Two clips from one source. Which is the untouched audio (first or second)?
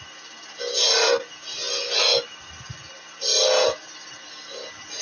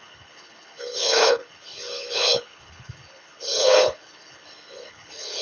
first